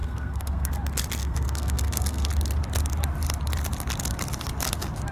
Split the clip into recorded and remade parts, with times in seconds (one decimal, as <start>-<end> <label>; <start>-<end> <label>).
0.0-0.7 remade; 0.7-1.2 recorded; 1.2-2.3 remade; 2.3-5.1 recorded